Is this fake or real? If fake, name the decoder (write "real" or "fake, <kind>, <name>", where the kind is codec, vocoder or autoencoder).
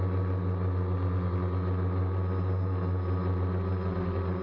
real